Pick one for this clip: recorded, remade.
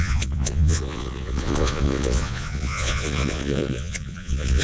remade